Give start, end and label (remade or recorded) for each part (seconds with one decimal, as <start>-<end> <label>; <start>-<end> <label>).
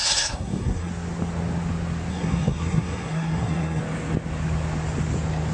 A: 0.0-0.9 remade; 0.9-2.1 recorded; 2.1-3.8 remade; 3.8-5.5 recorded